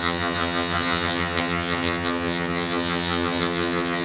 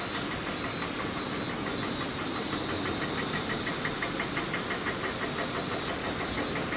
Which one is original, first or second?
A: second